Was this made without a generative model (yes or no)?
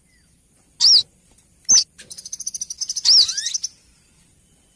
yes